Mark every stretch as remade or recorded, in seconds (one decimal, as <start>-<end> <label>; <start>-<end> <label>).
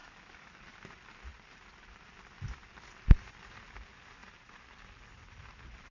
0.0-0.6 remade; 0.6-5.9 recorded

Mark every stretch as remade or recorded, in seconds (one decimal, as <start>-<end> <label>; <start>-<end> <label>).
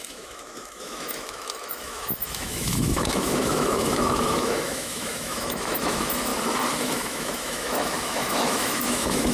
0.0-6.3 remade; 6.3-6.8 recorded; 6.8-9.3 remade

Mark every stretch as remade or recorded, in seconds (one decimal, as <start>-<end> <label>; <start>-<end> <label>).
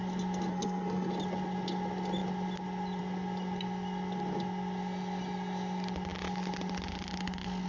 0.0-0.5 recorded; 0.5-1.1 remade; 1.1-7.7 recorded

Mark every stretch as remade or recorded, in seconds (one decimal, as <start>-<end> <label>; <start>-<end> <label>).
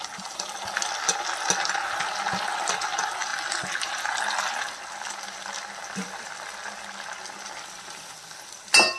0.0-9.0 recorded